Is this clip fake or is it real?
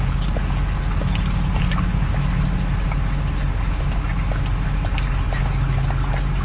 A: real